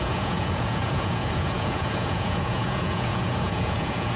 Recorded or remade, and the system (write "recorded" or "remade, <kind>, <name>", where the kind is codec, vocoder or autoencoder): remade, vocoder, Vocos